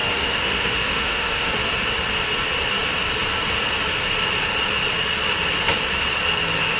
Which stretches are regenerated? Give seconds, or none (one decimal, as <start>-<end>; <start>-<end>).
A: 0.0-1.6